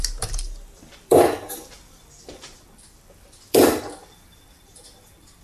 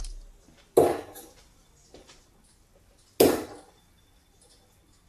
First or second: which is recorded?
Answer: second